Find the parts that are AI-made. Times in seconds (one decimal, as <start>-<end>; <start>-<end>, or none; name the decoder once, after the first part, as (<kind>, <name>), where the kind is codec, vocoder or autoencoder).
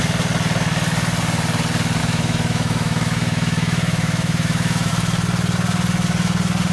2.0-4.9 (autoencoder, DAC-VAE)